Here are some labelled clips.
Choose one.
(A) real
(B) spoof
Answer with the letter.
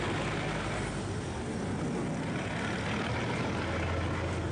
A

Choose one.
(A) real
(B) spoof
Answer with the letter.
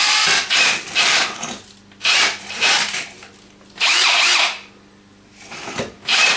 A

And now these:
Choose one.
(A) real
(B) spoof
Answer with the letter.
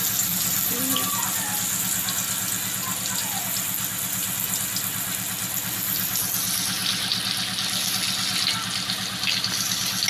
A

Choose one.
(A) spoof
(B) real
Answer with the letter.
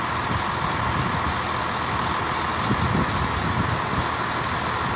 B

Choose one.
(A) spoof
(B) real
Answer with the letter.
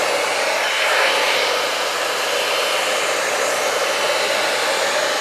A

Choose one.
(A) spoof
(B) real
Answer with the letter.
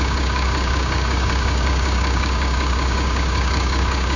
A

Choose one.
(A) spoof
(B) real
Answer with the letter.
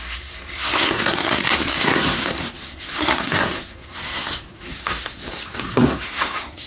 A